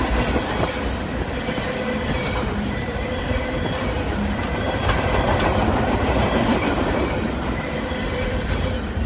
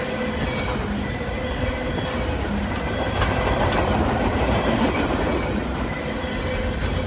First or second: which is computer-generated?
first